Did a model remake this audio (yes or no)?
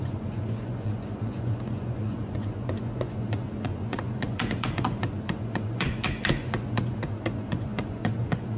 yes